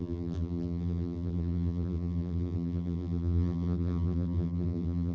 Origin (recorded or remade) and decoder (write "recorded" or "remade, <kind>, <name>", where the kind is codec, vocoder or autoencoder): remade, vocoder, BigVGAN v2